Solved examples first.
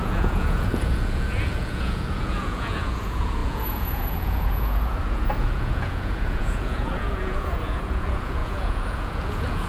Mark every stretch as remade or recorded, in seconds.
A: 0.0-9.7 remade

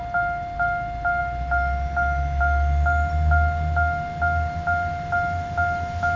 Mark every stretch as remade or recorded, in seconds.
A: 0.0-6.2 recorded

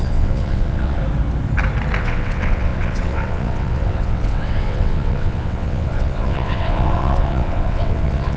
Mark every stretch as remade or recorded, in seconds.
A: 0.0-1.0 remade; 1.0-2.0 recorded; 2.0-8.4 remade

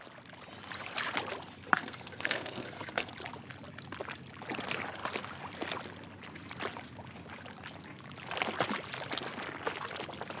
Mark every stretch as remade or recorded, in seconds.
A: 0.0-1.8 recorded; 1.8-3.1 remade; 3.1-10.4 recorded